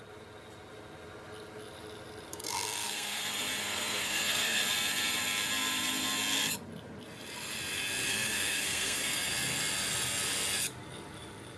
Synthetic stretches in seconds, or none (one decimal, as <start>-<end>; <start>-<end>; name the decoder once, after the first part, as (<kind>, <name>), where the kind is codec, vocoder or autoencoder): 2.3-3.2 (codec, SNAC); 3.6-4.6; 8.1-9.3

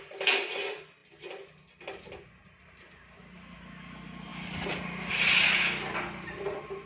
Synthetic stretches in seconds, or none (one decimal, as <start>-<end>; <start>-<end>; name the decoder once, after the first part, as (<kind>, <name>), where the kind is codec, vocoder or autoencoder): none